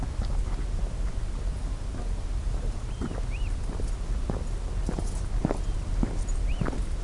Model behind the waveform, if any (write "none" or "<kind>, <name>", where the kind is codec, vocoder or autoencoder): none